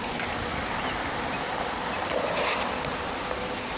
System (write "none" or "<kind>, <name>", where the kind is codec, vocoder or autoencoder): none